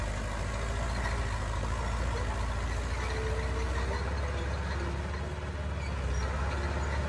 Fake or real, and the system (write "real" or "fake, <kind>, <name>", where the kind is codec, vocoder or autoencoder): real